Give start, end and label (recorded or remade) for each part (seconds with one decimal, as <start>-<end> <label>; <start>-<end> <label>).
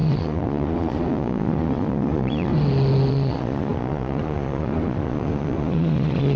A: 0.0-2.5 remade; 2.5-3.1 recorded; 3.1-6.4 remade